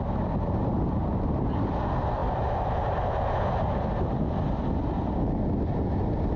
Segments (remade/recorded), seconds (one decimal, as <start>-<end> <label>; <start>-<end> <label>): 0.0-6.4 recorded